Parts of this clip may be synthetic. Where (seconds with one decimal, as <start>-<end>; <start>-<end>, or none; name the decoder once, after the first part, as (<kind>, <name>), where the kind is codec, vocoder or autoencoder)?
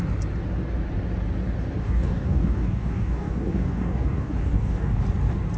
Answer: 1.8-5.0 (codec, DAC)